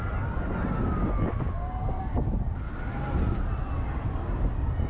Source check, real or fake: real